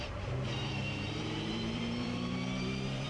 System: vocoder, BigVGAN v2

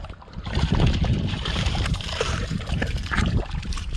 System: vocoder, BigVGAN v2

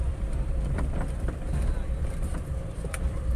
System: vocoder, BigVGAN v2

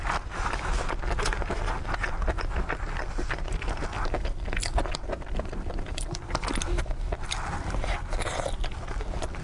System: none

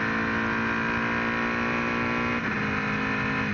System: none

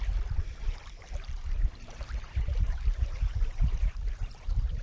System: vocoder, BigVGAN v2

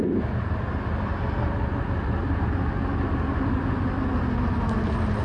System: none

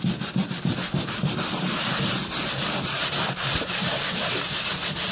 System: vocoder, BigVGAN v2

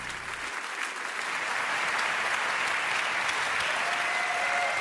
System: none